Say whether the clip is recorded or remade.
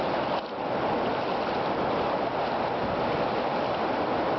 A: recorded